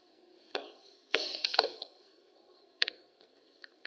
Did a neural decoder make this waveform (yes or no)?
yes